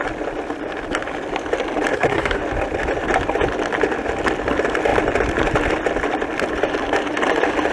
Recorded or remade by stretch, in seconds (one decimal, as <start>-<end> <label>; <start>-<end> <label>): 0.0-1.9 recorded; 1.9-2.4 remade; 2.4-7.7 recorded